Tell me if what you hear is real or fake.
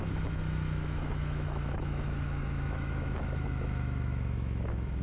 fake